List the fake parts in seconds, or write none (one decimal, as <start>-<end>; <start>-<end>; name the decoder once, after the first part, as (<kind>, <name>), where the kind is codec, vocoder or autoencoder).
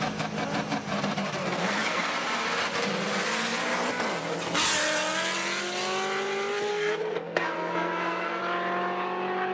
1.4-2.1 (codec, SNAC); 6.7-8.4